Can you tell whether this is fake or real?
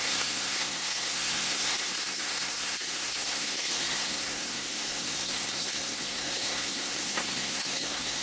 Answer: fake